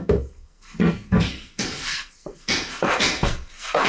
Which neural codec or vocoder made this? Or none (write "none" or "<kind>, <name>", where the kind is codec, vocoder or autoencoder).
codec, SNAC